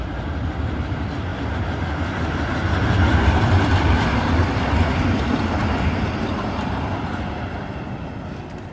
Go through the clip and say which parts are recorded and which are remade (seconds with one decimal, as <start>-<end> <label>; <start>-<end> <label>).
0.0-8.7 recorded